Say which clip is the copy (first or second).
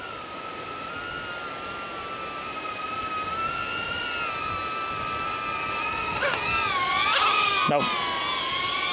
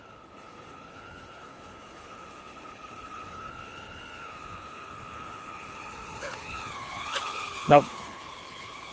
second